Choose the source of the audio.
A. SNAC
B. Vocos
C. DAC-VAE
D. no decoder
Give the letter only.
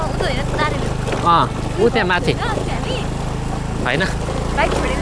D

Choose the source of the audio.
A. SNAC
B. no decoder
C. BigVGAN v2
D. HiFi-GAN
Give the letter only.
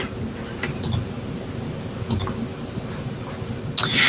B